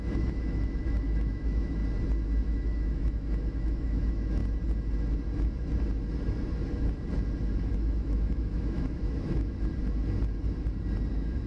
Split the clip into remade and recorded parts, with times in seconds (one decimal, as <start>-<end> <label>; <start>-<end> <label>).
0.0-1.8 remade; 1.8-2.4 recorded; 2.4-4.4 remade; 4.4-7.7 recorded; 7.7-9.7 remade; 9.7-11.1 recorded; 11.1-11.5 remade